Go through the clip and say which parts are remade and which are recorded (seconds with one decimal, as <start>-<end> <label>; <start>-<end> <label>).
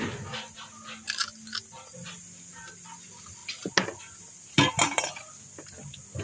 0.0-6.2 recorded